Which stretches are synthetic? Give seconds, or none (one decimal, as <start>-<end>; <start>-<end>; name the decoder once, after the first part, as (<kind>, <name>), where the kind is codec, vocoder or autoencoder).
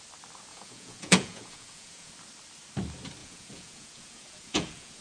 0.5-2.1 (vocoder, Vocos); 3.2-5.0